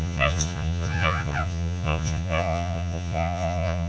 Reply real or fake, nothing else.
fake